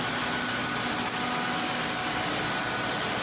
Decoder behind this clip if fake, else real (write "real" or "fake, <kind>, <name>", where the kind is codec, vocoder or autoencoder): real